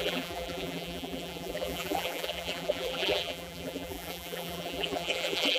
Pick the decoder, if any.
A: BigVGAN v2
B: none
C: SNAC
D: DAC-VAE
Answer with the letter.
A